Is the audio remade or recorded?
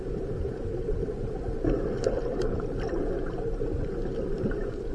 recorded